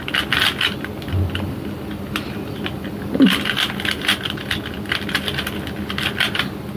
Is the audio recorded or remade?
recorded